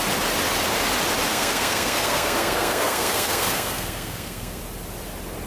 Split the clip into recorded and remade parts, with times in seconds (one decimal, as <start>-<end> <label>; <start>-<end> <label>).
0.0-1.3 recorded; 1.3-4.6 remade; 4.6-5.5 recorded

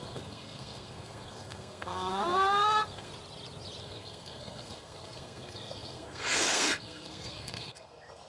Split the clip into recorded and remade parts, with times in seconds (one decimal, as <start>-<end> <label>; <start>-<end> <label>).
0.0-3.1 remade; 3.1-3.8 recorded; 3.8-8.3 remade

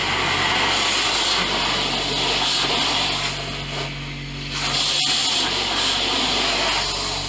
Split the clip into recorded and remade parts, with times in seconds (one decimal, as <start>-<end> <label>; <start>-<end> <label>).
0.0-7.3 recorded

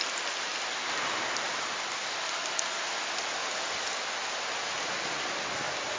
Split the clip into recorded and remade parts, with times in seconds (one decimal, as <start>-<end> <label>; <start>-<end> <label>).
0.0-6.0 recorded

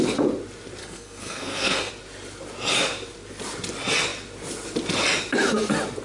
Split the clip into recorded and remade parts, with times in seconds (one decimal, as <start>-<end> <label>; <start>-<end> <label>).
0.0-0.8 recorded; 0.8-1.9 remade; 1.9-6.0 recorded

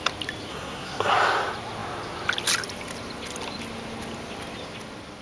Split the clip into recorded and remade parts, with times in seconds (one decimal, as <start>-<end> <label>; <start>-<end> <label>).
0.0-0.5 recorded; 0.5-1.1 remade; 1.1-5.2 recorded

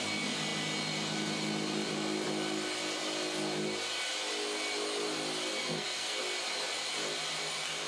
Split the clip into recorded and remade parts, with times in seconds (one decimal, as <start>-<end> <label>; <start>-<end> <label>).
0.0-5.6 recorded; 5.6-6.2 remade; 6.2-7.9 recorded